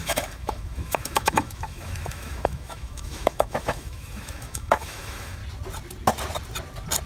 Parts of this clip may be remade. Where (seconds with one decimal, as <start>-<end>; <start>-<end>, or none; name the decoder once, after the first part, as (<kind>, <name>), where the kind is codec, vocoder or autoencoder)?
0.0-5.4 (autoencoder, DAC-VAE)